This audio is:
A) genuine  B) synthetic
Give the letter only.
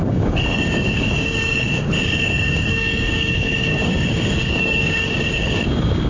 B